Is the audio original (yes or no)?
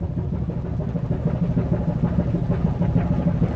yes